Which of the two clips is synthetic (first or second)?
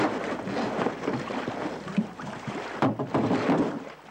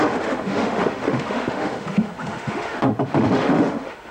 second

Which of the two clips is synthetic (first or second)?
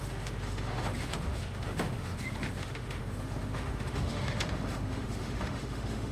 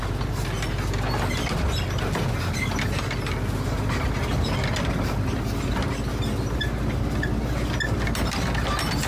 first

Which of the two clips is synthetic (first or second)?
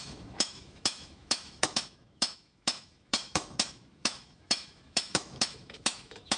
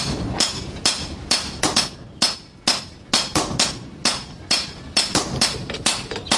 first